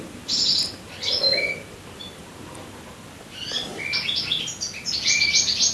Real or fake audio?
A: real